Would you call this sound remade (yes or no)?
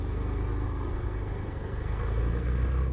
yes